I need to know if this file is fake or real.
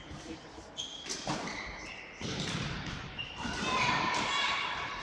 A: fake